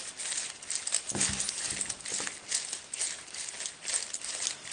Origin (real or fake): real